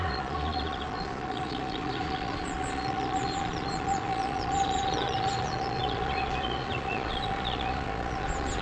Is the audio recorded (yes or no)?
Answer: no